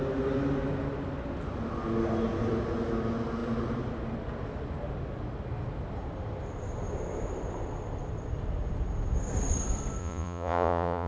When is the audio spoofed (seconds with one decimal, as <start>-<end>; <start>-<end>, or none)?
10.0-11.1